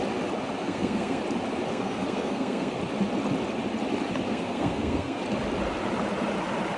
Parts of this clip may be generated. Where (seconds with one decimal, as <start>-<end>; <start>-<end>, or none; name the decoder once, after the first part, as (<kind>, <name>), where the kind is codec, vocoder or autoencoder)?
0.6-1.2 (codec, SNAC); 1.7-2.8; 4.3-5.2